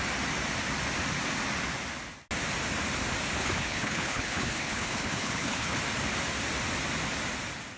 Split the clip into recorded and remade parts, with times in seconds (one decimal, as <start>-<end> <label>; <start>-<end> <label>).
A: 0.0-3.4 recorded; 3.4-5.8 remade; 5.8-7.8 recorded